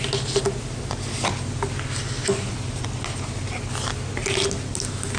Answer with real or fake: real